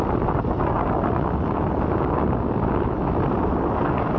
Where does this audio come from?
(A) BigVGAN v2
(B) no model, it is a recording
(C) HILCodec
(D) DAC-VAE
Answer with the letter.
B